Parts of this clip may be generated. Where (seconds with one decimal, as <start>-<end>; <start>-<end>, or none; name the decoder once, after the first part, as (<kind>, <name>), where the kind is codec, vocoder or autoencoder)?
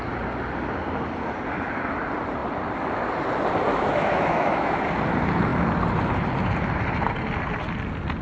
3.7-4.8 (autoencoder, DAC-VAE)